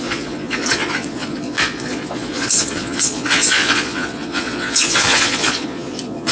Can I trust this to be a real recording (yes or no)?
no